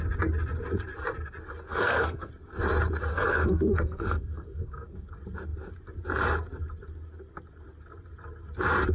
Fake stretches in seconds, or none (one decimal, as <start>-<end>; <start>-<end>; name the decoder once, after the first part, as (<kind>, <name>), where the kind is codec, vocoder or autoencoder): 1.7-2.3 (codec, SNAC); 3.1-5.1